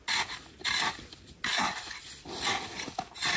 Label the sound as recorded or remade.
recorded